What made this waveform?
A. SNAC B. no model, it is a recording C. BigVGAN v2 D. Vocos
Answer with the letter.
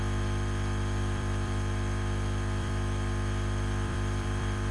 C